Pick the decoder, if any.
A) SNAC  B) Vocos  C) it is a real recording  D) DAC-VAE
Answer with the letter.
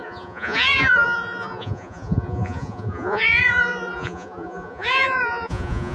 B